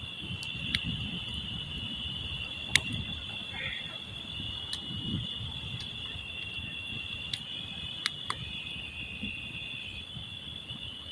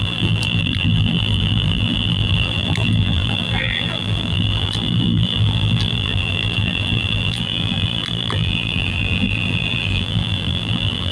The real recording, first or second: first